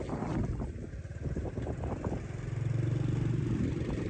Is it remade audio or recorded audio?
recorded